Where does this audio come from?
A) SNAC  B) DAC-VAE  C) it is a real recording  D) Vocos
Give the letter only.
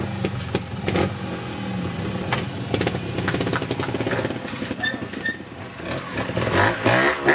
C